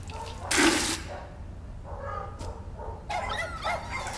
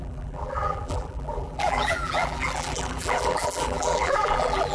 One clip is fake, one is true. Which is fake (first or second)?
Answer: second